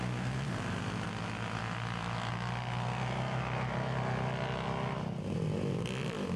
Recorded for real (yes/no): yes